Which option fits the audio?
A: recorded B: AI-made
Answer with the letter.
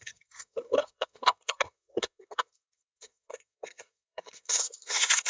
B